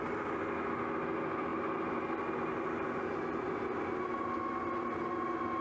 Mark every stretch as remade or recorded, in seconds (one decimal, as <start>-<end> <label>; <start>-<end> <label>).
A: 0.0-5.6 recorded